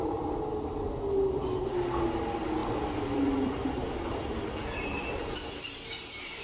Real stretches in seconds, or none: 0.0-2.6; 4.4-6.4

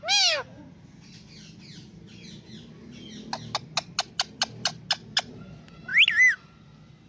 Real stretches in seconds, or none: 0.0-7.1

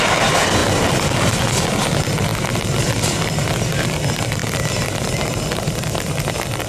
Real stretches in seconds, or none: 0.0-6.7

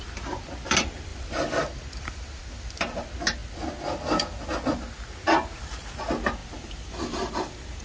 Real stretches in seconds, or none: 0.0-1.1; 2.4-6.4

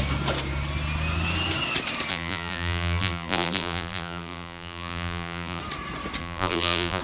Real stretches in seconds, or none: 0.0-2.1; 5.6-6.2

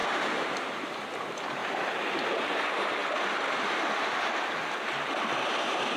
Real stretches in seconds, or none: 1.6-2.5; 3.0-5.3

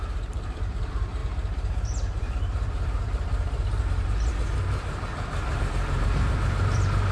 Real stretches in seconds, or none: none